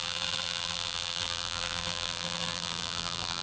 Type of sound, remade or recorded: remade